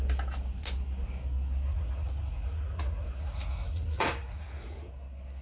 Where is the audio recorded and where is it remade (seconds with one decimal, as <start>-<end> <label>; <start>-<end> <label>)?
0.0-1.7 recorded; 1.7-4.9 remade; 4.9-5.4 recorded